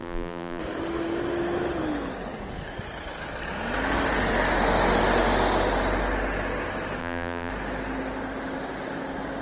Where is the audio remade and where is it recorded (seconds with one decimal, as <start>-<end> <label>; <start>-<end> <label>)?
0.0-0.6 remade; 0.6-7.0 recorded; 7.0-7.5 remade; 7.5-9.4 recorded